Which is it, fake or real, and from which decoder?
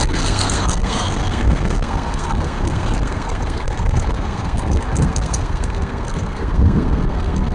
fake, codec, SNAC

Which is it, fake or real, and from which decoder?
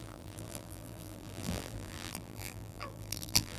fake, vocoder, BigVGAN v2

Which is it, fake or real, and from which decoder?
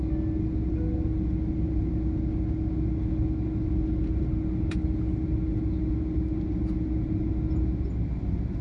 real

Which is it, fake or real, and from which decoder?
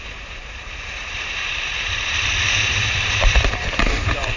fake, vocoder, BigVGAN v2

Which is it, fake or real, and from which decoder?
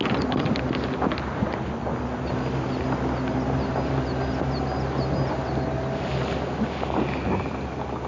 real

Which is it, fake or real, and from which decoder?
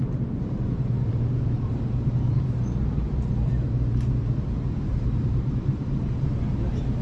fake, vocoder, BigVGAN v2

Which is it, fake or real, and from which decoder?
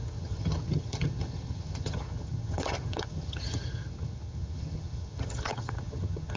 fake, vocoder, HiFi-GAN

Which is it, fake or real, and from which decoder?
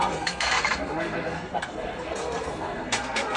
fake, codec, SNAC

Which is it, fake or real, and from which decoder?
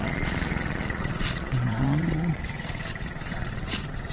fake, vocoder, Vocos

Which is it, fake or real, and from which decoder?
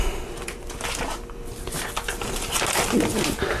real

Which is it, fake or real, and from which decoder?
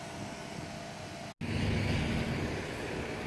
real